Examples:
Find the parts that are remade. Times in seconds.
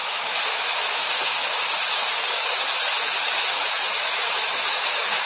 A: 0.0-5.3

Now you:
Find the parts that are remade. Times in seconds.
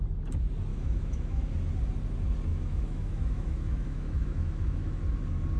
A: 0.7-1.5; 2.5-5.0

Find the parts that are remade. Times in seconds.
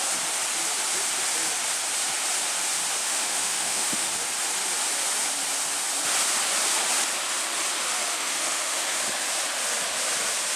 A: 3.0-4.1; 8.1-9.0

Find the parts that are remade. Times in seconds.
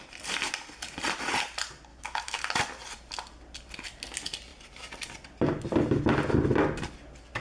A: 1.9-2.4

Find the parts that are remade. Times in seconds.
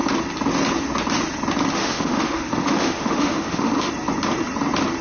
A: 1.8-3.9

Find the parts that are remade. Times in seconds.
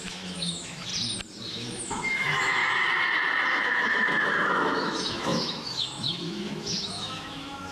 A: 0.0-0.9; 1.4-2.6; 3.6-7.7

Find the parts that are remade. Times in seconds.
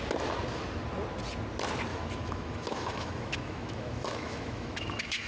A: 1.9-5.3